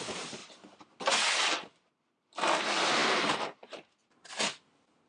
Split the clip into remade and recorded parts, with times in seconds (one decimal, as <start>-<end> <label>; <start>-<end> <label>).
0.0-5.1 recorded

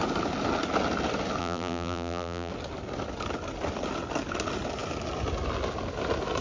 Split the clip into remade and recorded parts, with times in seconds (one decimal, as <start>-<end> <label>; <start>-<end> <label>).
0.0-1.4 recorded; 1.4-2.5 remade; 2.5-6.4 recorded

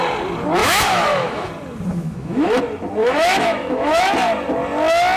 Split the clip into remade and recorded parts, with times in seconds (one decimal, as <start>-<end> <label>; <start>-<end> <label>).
0.0-0.6 recorded; 0.6-1.5 remade; 1.5-1.9 recorded; 1.9-2.6 remade; 2.6-3.0 recorded; 3.0-4.0 remade; 4.0-5.2 recorded

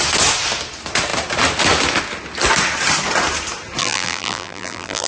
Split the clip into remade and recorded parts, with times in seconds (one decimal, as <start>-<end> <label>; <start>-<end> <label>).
0.0-3.8 recorded; 3.8-5.1 remade

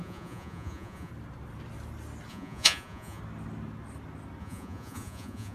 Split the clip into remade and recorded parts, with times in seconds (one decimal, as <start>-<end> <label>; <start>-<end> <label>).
0.0-1.1 remade; 1.1-2.3 recorded; 2.3-3.2 remade; 3.2-4.4 recorded; 4.4-5.5 remade